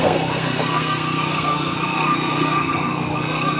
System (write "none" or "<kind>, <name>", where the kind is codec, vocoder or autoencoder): codec, SNAC